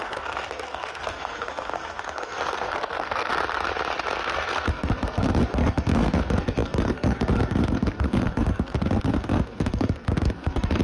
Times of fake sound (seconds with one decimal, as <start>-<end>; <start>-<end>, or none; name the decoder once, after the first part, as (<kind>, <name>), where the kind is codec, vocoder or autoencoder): 0.0-3.3 (codec, SNAC); 4.2-10.8